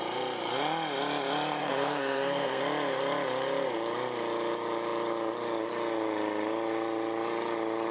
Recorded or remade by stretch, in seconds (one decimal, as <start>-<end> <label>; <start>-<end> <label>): 0.0-1.6 recorded; 1.6-2.6 remade; 2.6-7.9 recorded